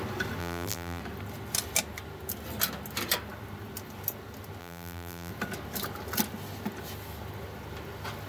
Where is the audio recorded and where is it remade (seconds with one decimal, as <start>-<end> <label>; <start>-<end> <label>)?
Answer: 0.0-0.4 recorded; 0.4-1.0 remade; 1.0-4.6 recorded; 4.6-5.3 remade; 5.3-8.3 recorded